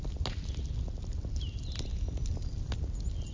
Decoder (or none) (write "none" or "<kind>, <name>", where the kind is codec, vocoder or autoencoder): none